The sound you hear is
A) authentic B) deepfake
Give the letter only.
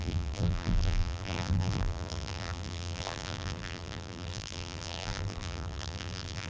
B